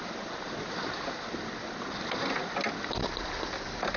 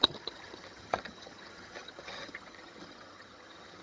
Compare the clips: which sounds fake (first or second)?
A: second